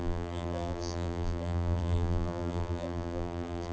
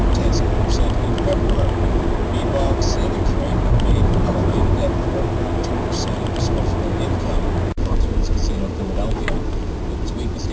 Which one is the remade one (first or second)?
first